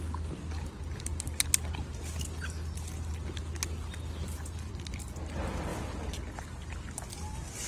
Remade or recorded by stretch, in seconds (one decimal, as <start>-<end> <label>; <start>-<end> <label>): 0.0-7.7 recorded